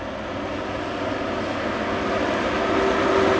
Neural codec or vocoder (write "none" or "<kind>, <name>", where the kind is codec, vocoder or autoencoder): none